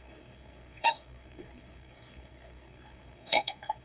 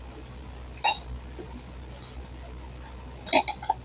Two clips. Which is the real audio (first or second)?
second